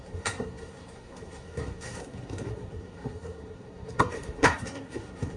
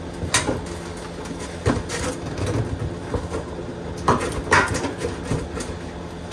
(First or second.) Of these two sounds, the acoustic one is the second